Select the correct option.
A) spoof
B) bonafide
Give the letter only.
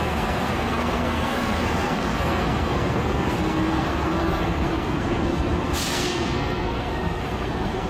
A